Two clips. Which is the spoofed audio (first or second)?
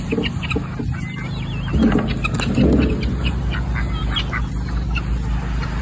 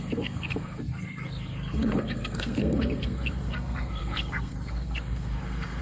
second